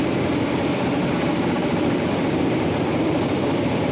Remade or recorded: remade